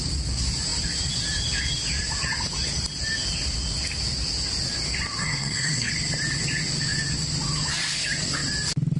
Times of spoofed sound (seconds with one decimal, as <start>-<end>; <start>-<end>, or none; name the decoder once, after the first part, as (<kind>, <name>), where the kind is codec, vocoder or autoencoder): 5.2-5.9 (codec, SNAC)